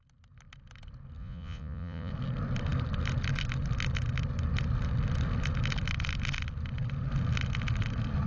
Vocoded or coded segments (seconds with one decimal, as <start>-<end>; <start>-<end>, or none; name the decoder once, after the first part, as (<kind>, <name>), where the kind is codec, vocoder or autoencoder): 1.2-2.1 (vocoder, Vocos)